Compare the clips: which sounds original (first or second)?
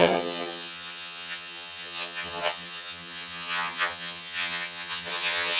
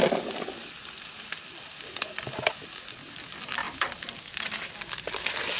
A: second